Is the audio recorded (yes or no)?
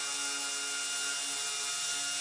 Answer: yes